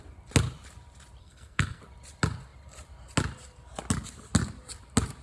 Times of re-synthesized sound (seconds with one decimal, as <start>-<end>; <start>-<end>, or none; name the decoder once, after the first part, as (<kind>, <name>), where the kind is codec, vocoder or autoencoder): 1.2-1.8 (codec, SNAC)